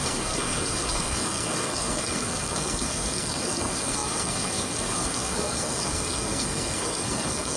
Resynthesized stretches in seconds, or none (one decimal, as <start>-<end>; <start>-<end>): 0.0-7.6